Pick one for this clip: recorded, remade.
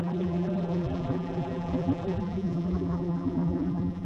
remade